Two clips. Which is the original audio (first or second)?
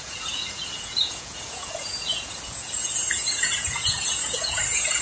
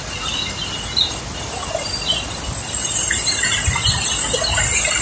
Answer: second